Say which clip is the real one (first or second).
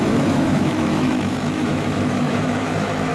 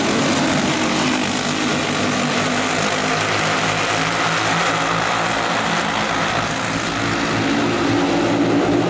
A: second